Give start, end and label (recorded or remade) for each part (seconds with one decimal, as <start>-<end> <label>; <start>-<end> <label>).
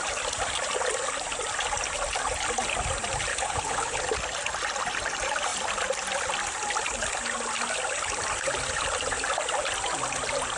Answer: 0.0-3.3 recorded; 3.3-4.0 remade; 4.0-10.6 recorded